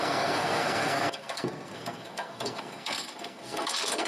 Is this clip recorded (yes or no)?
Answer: no